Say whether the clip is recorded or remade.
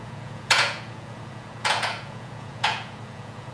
remade